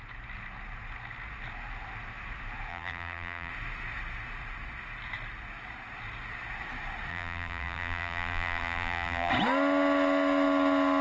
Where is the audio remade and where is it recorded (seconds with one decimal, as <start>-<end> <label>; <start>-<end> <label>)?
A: 0.0-2.7 recorded; 2.7-3.5 remade; 3.5-7.1 recorded; 7.1-9.3 remade; 9.3-11.0 recorded